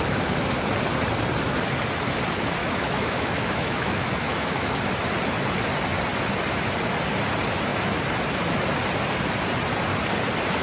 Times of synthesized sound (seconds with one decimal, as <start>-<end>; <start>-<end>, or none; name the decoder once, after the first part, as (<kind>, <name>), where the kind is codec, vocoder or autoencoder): 2.6-4.7 (autoencoder, DAC-VAE)